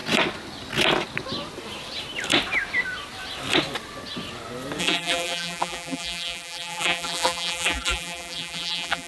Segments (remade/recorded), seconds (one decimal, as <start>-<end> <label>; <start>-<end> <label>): 0.0-4.8 recorded; 4.8-9.1 remade